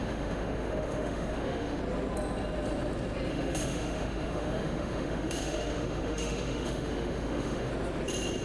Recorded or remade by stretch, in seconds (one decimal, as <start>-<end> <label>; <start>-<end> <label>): 0.0-1.8 remade; 1.8-3.3 recorded; 3.3-7.7 remade; 7.7-8.4 recorded